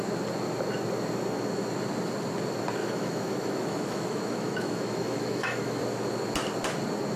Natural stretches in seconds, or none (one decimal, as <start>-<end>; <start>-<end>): 0.0-2.8; 5.8-7.2

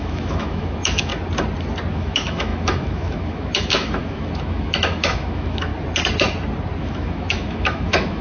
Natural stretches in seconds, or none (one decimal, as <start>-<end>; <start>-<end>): 1.1-1.9; 5.7-6.8

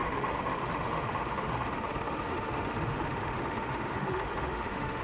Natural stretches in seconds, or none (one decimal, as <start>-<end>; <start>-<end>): none

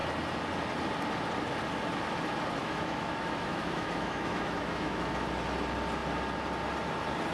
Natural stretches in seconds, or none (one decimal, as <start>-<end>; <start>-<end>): 0.0-2.6; 5.1-7.3